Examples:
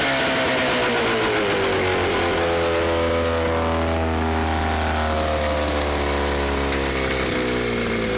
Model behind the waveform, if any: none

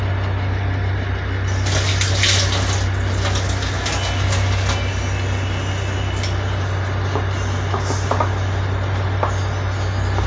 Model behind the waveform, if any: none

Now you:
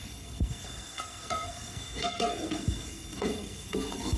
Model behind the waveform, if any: codec, SNAC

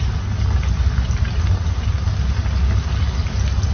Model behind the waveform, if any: none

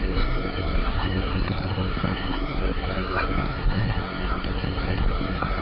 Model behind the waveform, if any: codec, SNAC